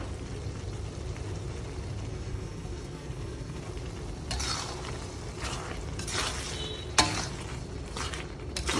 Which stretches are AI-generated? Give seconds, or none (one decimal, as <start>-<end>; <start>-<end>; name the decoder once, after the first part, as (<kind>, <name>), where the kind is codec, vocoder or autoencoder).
2.1-3.6 (codec, SNAC)